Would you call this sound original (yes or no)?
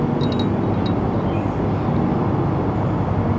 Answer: yes